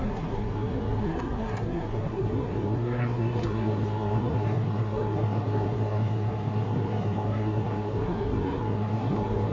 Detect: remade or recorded remade